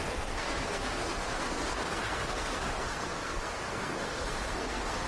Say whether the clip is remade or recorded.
remade